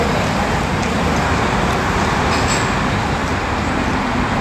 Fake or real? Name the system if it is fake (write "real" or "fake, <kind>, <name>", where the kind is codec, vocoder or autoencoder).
real